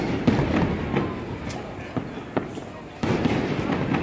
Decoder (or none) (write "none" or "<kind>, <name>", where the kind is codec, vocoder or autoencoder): none